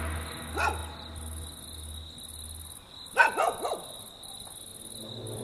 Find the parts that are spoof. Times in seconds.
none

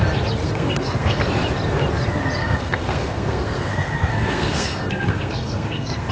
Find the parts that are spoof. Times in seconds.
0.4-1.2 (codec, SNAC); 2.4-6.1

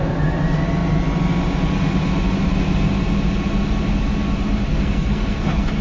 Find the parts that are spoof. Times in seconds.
4.7-5.8 (codec, SNAC)

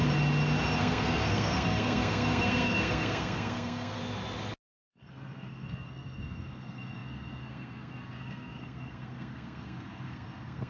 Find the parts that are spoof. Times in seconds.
0.8-4.0 (codec, SNAC); 4.8-10.7

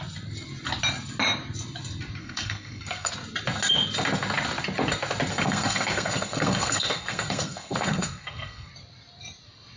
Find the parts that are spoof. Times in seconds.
2.2-3.1 (codec, SNAC); 5.3-8.7

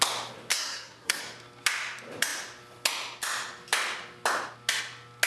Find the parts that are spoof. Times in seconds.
0.5-1.2 (codec, SNAC)